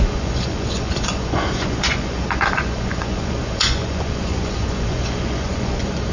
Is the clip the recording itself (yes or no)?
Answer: no